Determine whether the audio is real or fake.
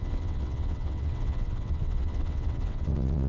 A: fake